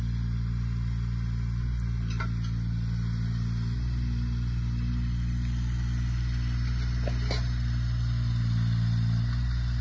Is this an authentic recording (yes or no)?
yes